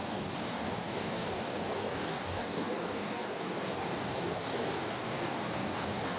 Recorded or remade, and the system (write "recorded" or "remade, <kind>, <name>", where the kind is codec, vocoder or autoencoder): remade, codec, DAC